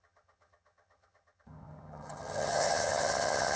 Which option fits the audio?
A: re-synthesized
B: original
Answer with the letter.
A